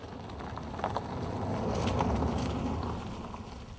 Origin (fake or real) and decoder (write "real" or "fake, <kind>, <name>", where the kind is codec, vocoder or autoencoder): real